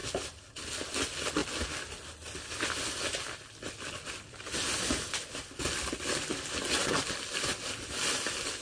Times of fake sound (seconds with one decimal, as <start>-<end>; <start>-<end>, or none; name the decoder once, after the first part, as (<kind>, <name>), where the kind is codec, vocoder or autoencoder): none